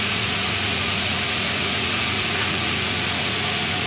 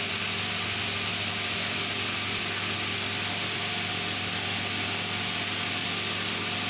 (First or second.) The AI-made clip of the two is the first